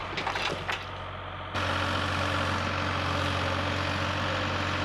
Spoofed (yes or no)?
no